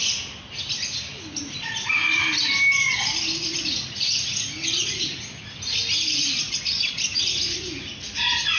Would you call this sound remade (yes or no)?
no